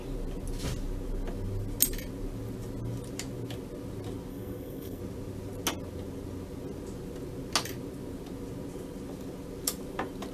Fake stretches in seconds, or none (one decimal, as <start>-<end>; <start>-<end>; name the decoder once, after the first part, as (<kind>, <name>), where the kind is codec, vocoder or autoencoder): 4.3-5.0 (codec, SNAC)